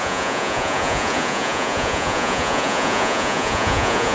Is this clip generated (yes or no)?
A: yes